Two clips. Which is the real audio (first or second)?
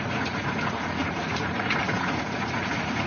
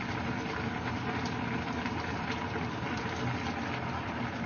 second